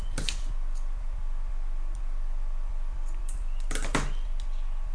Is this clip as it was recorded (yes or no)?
no